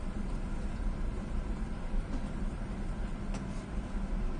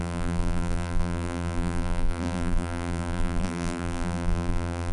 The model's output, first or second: second